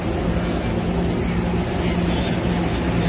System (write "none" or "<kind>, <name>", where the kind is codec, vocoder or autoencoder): none